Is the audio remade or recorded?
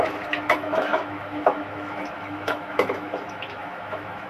remade